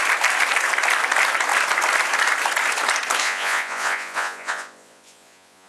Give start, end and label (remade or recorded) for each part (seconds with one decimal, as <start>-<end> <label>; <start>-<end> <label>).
0.0-3.2 recorded; 3.2-5.7 remade